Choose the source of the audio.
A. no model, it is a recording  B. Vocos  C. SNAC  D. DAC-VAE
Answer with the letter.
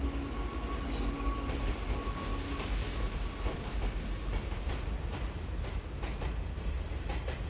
A